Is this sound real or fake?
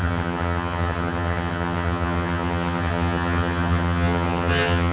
fake